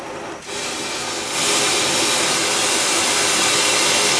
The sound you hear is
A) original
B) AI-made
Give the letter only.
A